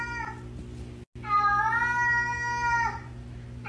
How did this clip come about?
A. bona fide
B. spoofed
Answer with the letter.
A